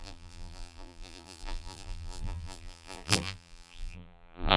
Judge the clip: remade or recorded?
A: remade